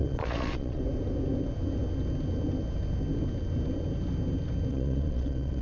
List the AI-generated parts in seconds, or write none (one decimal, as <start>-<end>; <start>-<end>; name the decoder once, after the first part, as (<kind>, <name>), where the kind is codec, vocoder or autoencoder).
0.0-0.8 (vocoder, Vocos); 4.7-5.6